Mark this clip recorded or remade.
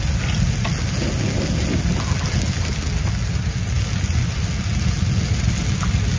recorded